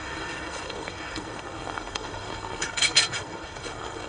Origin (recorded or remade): remade